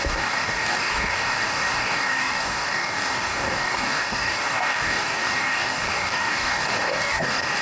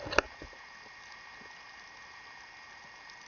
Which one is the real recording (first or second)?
second